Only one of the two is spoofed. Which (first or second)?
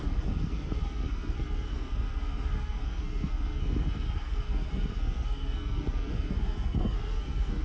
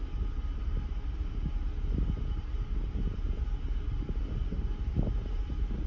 first